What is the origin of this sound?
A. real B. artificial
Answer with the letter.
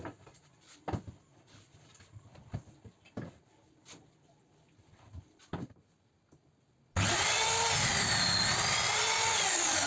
A